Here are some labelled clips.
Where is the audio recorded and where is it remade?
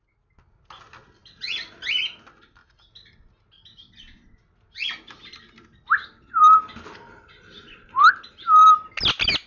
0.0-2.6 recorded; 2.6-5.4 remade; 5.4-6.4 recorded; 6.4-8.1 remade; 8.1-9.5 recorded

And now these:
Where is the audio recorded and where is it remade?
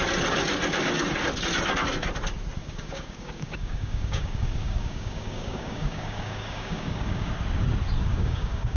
0.0-2.6 recorded; 2.6-7.3 remade; 7.3-8.1 recorded; 8.1-8.8 remade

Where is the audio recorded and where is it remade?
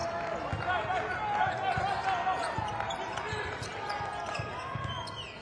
0.0-5.4 recorded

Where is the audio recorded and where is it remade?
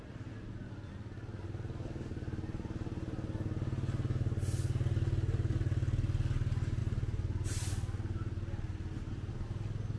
0.0-10.0 recorded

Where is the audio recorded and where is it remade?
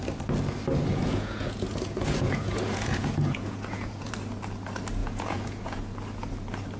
0.0-0.9 recorded; 0.9-4.1 remade; 4.1-5.0 recorded; 5.0-5.8 remade; 5.8-6.8 recorded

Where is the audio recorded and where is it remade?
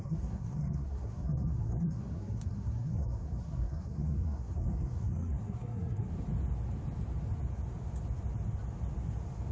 0.0-6.1 remade; 6.1-9.5 recorded